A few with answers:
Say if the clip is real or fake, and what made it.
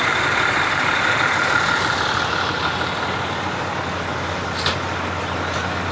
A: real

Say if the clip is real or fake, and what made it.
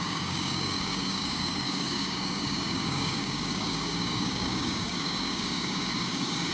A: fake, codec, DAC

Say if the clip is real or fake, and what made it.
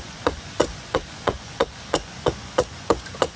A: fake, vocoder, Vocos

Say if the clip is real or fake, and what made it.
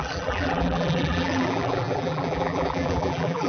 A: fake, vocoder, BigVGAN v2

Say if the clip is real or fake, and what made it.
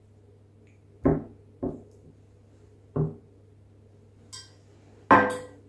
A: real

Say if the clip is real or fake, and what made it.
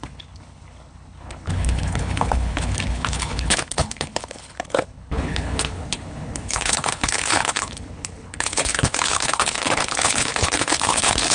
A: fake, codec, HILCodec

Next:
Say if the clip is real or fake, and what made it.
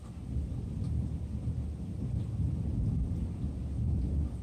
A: real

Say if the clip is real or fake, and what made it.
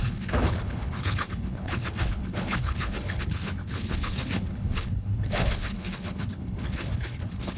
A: fake, codec, HILCodec